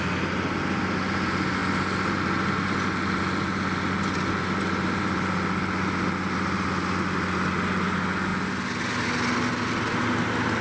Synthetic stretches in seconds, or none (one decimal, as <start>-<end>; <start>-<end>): none